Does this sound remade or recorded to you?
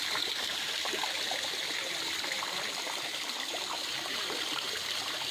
remade